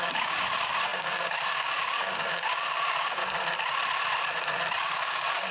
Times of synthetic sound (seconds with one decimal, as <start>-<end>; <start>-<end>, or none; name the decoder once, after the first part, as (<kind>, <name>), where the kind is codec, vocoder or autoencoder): 0.0-3.2 (codec, DAC); 4.8-5.5